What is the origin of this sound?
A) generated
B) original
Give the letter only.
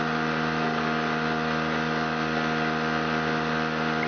B